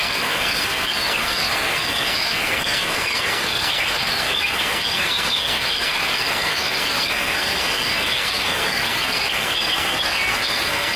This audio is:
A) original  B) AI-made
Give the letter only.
B